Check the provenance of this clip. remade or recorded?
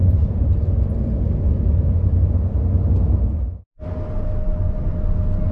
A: recorded